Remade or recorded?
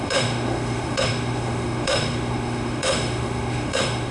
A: remade